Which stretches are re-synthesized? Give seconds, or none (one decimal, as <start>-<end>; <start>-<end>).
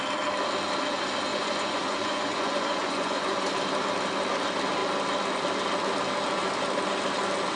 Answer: 1.3-3.5